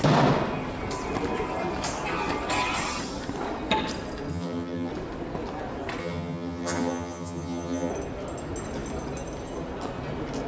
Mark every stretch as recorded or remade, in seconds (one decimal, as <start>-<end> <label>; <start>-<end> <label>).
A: 0.0-4.3 recorded; 4.3-4.9 remade; 4.9-6.0 recorded; 6.0-7.9 remade; 7.9-10.5 recorded